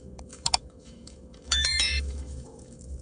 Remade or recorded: remade